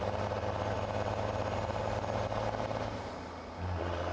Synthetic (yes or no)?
no